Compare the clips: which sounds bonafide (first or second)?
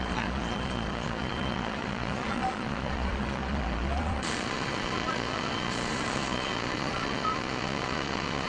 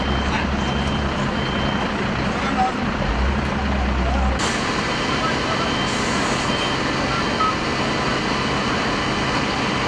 second